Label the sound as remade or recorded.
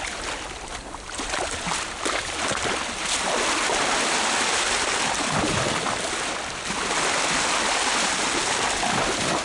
recorded